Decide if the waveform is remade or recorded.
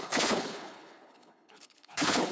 remade